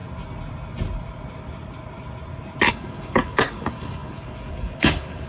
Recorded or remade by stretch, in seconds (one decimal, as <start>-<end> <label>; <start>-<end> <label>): 0.0-2.7 recorded; 2.7-5.3 remade